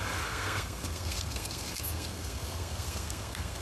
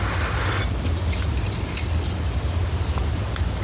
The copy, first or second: first